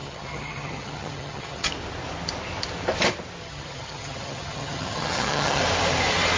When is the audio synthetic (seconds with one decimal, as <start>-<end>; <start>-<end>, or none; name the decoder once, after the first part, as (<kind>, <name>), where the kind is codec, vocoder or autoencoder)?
0.0-1.7 (vocoder, HiFi-GAN); 3.4-5.6